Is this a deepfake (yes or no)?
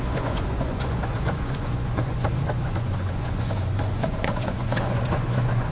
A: yes